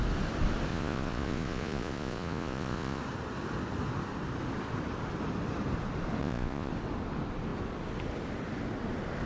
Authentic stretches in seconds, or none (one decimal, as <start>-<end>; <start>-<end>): 0.0-0.7; 3.0-6.2; 6.7-9.3